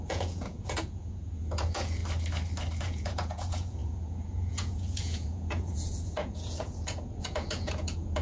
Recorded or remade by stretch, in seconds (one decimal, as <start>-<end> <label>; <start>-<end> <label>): 0.0-2.0 remade; 2.0-2.8 recorded; 2.8-8.2 remade